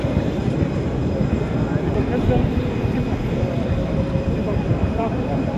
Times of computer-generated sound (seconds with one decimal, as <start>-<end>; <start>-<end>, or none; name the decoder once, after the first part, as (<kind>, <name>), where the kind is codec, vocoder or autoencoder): 0.0-1.0 (vocoder, BigVGAN v2); 4.4-5.6